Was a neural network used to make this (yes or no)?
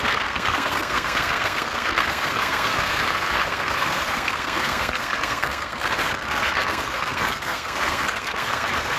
yes